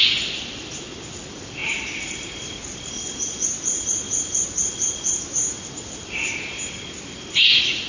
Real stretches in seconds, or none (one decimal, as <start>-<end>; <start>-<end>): 0.0-7.9